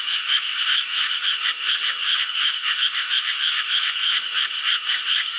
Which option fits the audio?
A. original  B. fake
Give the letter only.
B